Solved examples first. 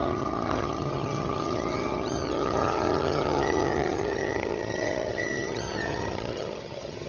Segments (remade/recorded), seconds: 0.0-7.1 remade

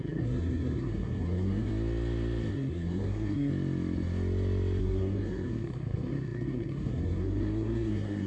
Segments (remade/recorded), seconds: 0.0-1.7 remade; 1.7-2.5 recorded; 2.5-3.5 remade; 3.5-4.8 recorded; 4.8-8.3 remade

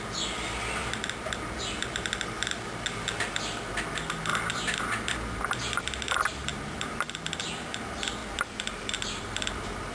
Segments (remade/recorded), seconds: 0.0-4.3 recorded; 4.3-5.4 remade; 5.4-6.5 recorded; 6.5-7.4 remade; 7.4-8.2 recorded; 8.2-9.9 remade

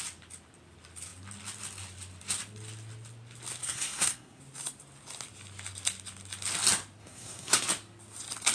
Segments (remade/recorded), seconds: 0.0-3.6 recorded; 3.6-4.4 remade; 4.4-7.0 recorded; 7.0-7.7 remade; 7.7-8.5 recorded

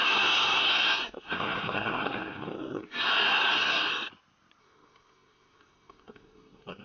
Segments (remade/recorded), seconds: 0.0-3.9 remade; 3.9-4.6 recorded; 4.6-6.8 remade

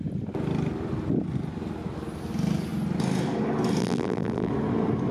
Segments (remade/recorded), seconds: 0.0-3.8 recorded; 3.8-4.5 remade; 4.5-5.1 recorded

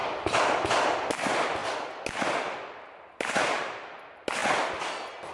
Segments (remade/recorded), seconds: 0.0-5.3 recorded

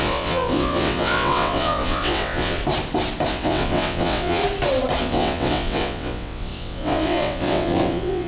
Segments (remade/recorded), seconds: 0.0-2.6 remade; 2.6-3.3 recorded; 3.3-4.4 remade; 4.4-5.0 recorded; 5.0-8.3 remade